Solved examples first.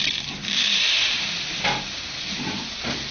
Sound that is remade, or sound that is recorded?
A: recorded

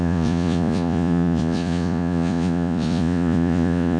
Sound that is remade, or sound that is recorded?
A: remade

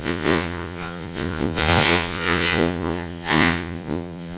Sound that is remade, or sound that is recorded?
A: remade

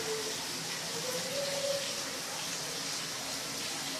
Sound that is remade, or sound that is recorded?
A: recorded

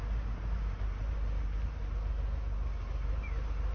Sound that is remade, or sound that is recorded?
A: recorded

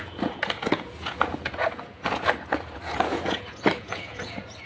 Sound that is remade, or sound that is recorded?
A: remade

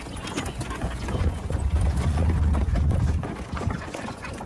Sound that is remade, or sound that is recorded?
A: remade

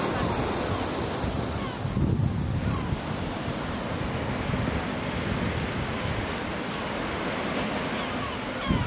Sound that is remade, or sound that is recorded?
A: recorded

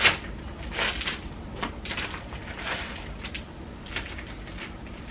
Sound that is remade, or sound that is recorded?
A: recorded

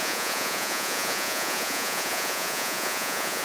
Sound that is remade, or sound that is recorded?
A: remade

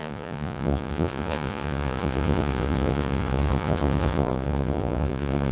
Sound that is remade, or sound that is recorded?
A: remade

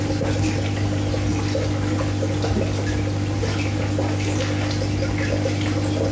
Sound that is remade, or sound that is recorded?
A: recorded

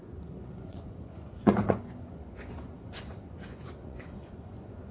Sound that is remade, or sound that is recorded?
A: remade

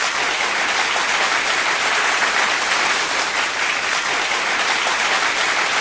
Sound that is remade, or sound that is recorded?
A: recorded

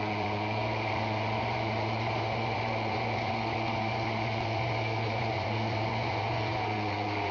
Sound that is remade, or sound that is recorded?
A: remade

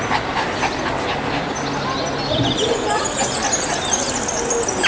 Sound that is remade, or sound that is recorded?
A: recorded